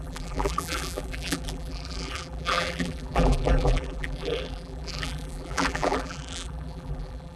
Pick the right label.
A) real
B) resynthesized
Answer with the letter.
B